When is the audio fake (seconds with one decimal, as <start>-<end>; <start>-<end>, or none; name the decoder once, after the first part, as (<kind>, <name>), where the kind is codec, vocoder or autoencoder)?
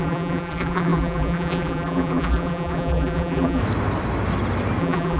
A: 0.0-3.6 (vocoder, BigVGAN v2); 4.8-5.2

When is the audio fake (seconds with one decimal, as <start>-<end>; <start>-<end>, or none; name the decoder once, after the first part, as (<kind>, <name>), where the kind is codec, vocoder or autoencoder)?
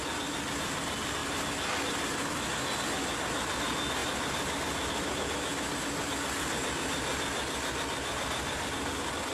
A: none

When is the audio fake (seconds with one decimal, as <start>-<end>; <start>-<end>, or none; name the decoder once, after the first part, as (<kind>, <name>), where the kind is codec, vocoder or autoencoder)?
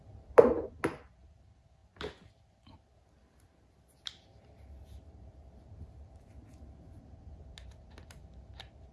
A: 1.8-5.7 (vocoder, BigVGAN v2)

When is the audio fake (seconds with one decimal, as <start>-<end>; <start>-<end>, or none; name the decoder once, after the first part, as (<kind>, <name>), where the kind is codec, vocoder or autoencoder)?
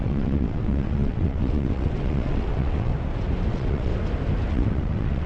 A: 0.0-2.9 (vocoder, WaveNeXt); 3.5-3.9; 4.5-5.3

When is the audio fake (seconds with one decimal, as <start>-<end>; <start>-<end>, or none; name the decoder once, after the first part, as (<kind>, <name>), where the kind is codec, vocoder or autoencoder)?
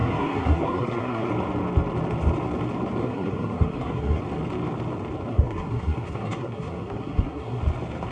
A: 0.0-1.3 (codec, SNAC); 3.0-4.2; 5.3-7.6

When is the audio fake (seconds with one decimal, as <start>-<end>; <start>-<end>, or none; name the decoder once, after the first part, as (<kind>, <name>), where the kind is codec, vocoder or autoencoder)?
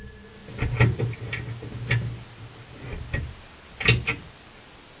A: none